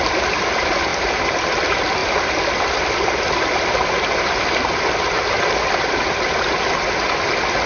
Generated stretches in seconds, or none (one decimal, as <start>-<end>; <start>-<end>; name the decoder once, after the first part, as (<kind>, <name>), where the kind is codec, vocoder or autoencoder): none